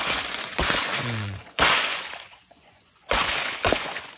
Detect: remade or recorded remade